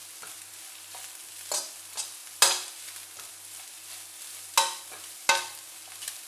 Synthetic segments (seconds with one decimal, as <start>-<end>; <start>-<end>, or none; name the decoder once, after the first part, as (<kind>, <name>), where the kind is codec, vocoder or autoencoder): none